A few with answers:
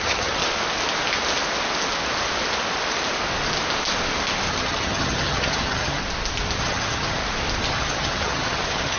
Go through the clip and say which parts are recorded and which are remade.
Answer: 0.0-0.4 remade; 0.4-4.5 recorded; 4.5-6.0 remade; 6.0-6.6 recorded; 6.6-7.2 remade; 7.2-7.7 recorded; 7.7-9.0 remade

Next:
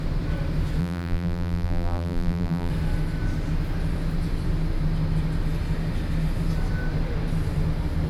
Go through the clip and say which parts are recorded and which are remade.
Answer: 0.0-0.8 recorded; 0.8-2.7 remade; 2.7-8.1 recorded

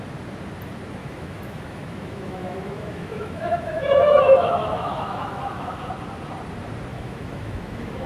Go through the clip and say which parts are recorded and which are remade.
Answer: 0.0-1.0 recorded; 1.0-5.9 remade; 5.9-6.9 recorded; 6.9-8.1 remade